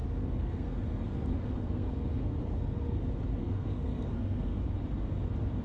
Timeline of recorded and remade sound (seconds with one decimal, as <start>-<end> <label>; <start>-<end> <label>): 0.0-3.0 remade; 3.0-3.4 recorded; 3.4-4.6 remade; 4.6-5.6 recorded